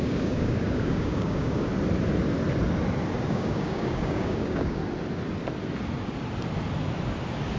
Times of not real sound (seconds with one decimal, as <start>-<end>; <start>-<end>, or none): 0.0-1.7; 3.3-4.8